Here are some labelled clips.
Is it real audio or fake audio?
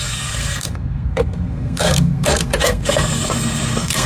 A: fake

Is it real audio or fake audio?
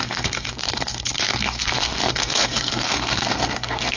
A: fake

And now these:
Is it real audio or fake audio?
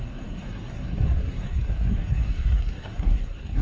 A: fake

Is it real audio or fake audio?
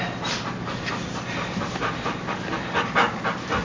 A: real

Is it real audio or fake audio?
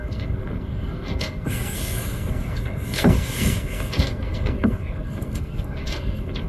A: fake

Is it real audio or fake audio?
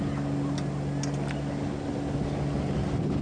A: real